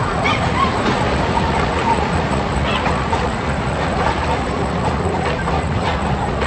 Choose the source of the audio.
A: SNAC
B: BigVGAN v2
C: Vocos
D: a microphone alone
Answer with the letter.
C